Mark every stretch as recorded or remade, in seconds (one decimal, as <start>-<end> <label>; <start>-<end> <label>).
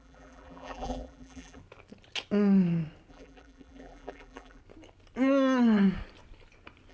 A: 0.0-1.6 remade; 1.6-3.1 recorded; 3.1-4.6 remade; 4.6-6.9 recorded